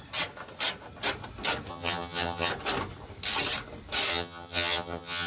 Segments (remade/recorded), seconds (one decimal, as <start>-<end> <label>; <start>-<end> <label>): 0.0-1.7 recorded; 1.7-2.5 remade; 2.5-4.1 recorded; 4.1-5.3 remade